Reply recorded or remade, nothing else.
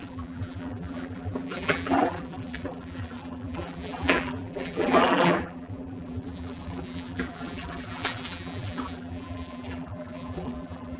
remade